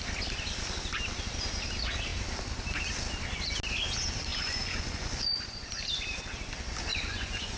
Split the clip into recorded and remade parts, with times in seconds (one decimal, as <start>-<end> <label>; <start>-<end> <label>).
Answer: 0.0-4.3 recorded; 4.3-5.7 remade; 5.7-6.9 recorded; 6.9-7.6 remade